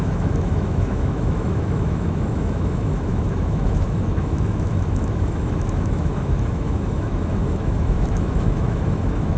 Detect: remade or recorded remade